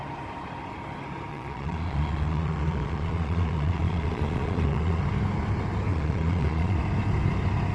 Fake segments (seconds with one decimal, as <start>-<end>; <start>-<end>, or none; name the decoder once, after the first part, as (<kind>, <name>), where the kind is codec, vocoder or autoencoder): 1.3-5.0 (vocoder, Vocos); 5.9-6.8